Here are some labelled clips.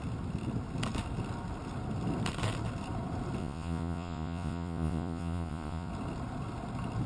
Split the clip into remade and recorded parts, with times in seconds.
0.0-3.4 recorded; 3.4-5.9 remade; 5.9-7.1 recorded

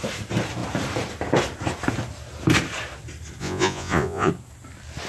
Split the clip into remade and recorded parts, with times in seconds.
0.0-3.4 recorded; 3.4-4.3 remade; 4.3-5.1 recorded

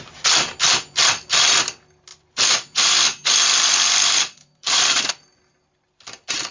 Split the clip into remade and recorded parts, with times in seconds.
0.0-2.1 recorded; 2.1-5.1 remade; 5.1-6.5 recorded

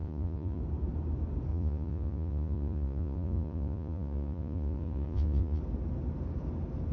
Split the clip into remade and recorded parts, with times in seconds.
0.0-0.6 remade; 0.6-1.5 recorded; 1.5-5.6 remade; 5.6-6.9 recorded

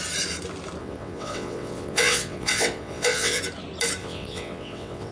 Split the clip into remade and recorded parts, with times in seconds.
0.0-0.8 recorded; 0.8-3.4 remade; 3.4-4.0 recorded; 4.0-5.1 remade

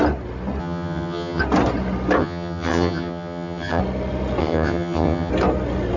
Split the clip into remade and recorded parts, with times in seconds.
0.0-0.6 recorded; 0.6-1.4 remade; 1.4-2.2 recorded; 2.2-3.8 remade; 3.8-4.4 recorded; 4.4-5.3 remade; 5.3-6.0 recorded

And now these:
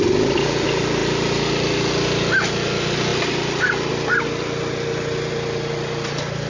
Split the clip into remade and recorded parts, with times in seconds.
0.0-6.5 recorded

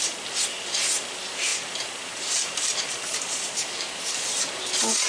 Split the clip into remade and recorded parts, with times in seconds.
0.0-1.5 recorded; 1.5-4.6 remade; 4.6-5.1 recorded